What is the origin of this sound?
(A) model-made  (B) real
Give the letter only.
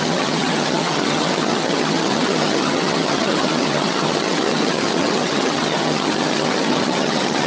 A